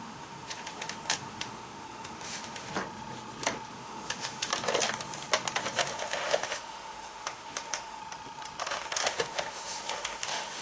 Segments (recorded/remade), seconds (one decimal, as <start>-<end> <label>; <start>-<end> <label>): 0.0-2.7 remade; 2.7-3.7 recorded; 3.7-4.5 remade; 4.5-5.9 recorded; 5.9-8.0 remade; 8.0-8.6 recorded; 8.6-10.6 remade